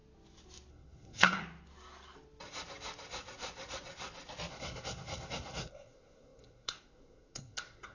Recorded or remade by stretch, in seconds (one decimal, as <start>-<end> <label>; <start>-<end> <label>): 0.0-0.7 recorded; 0.7-1.4 remade; 1.4-4.5 recorded; 4.5-7.9 remade